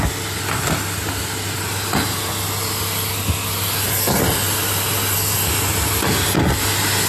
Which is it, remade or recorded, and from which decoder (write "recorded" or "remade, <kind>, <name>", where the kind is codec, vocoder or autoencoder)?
recorded